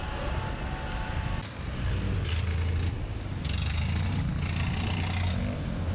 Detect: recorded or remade recorded